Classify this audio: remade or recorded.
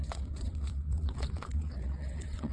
remade